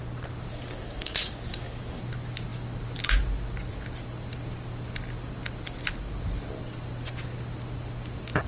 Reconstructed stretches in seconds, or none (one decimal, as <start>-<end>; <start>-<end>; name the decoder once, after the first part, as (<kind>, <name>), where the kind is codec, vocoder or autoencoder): 0.5-2.0 (codec, DAC)